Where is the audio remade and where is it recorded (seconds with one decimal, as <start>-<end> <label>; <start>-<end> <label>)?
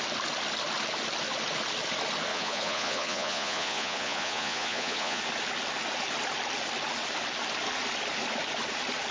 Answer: 0.0-2.3 recorded; 2.3-5.2 remade; 5.2-9.1 recorded